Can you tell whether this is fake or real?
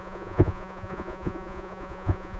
fake